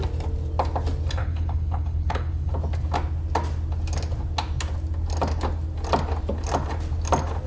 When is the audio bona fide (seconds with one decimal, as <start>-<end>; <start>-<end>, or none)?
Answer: 0.0-1.2; 2.5-7.5